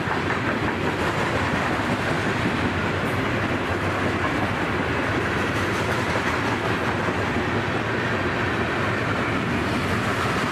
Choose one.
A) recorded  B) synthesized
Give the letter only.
A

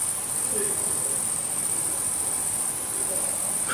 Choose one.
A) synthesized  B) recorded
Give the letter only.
B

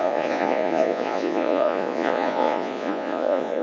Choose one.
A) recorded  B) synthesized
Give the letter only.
B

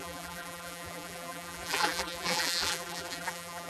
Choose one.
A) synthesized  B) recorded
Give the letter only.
A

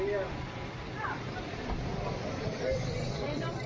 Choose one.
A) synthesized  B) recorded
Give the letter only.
A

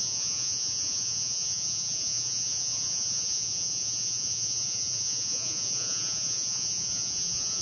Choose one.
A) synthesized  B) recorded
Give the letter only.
A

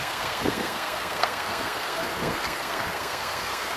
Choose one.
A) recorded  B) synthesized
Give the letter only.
B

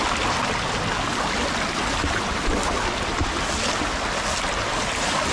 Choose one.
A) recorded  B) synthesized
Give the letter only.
A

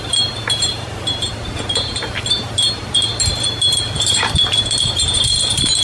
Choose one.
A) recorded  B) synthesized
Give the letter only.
B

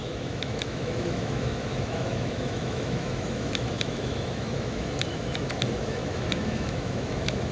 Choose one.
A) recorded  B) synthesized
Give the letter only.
B